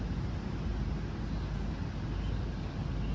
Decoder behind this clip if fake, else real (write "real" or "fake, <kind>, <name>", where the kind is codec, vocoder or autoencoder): real